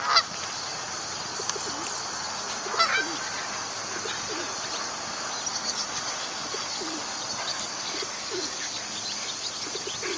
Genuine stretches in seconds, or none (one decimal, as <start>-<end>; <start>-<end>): 0.0-5.5; 6.9-7.5; 8.8-10.2